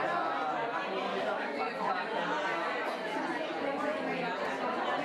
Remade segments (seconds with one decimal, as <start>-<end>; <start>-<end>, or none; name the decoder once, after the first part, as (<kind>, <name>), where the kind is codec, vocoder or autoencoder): 1.1-1.9 (codec, DAC)